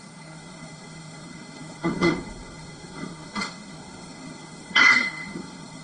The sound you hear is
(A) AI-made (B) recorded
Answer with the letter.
A